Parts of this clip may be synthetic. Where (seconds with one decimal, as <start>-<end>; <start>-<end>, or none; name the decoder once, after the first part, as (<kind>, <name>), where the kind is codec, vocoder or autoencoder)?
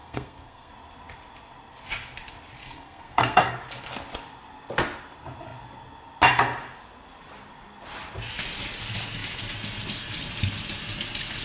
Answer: 0.0-0.7 (codec, SNAC); 2.6-3.6